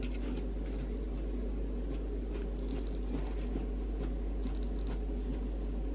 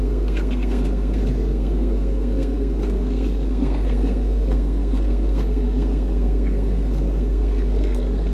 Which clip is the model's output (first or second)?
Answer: second